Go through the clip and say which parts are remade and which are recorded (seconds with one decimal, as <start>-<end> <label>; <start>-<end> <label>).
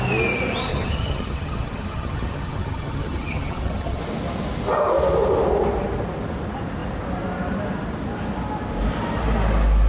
0.0-0.7 recorded; 0.7-4.0 remade; 4.0-9.9 recorded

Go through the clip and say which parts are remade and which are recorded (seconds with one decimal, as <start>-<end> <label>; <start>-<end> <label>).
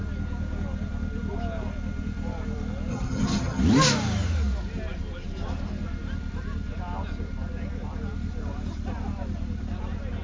0.0-2.9 recorded; 2.9-3.6 remade; 3.6-10.2 recorded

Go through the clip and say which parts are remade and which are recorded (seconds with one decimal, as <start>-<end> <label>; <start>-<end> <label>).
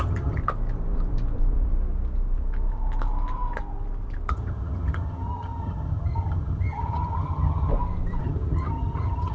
0.0-0.4 remade; 0.4-4.3 recorded; 4.3-7.7 remade; 7.7-8.2 recorded; 8.2-9.3 remade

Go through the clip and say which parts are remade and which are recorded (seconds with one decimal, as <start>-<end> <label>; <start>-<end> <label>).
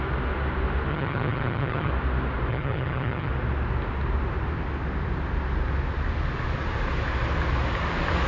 0.0-0.9 recorded; 0.9-1.9 remade; 1.9-2.5 recorded; 2.5-3.3 remade; 3.3-8.3 recorded